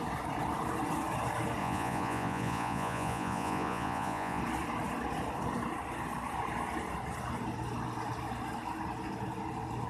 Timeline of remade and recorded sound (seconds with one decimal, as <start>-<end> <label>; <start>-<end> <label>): 0.0-1.6 recorded; 1.6-4.4 remade; 4.4-9.9 recorded